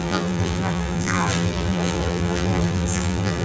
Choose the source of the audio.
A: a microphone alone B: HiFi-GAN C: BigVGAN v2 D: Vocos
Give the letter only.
C